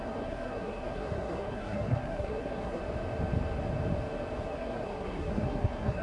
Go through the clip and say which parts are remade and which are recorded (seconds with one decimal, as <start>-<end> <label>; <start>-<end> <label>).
0.0-2.8 remade; 2.8-4.4 recorded; 4.4-6.0 remade

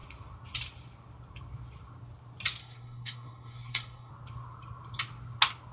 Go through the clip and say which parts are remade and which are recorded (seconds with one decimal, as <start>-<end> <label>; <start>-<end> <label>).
0.0-2.6 recorded; 2.6-4.1 remade; 4.1-5.7 recorded

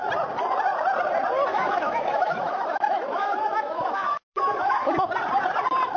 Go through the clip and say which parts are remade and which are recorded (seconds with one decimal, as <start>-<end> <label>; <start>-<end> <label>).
0.0-1.5 recorded; 1.5-5.1 remade; 5.1-6.0 recorded